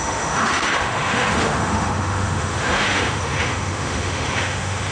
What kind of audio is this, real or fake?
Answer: fake